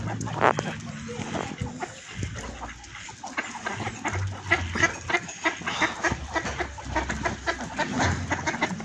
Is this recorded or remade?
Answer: recorded